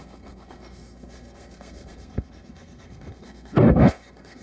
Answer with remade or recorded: remade